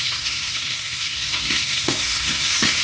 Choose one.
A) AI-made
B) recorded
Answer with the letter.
A